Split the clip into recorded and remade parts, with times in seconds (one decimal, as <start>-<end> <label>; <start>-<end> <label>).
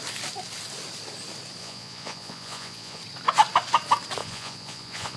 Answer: 0.0-1.6 recorded; 1.6-3.0 remade; 3.0-4.2 recorded; 4.2-5.2 remade